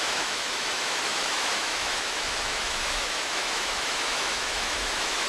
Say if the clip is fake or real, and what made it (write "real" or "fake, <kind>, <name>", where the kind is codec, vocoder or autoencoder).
fake, autoencoder, DAC-VAE